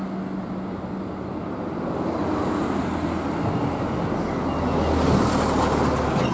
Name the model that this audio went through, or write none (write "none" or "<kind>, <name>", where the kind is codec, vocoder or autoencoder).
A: none